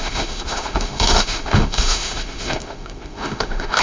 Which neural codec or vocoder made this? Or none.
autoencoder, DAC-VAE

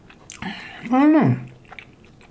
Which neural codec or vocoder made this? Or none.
none